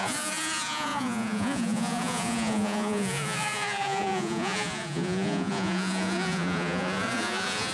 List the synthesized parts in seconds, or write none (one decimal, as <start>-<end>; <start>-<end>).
0.0-7.7